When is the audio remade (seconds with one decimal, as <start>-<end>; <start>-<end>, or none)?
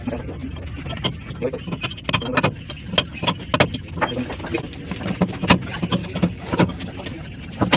6.0-6.9